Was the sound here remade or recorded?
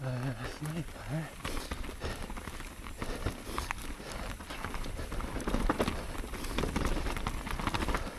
recorded